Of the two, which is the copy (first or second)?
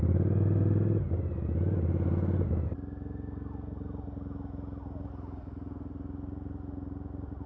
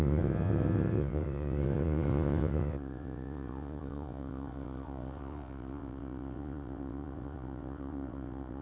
second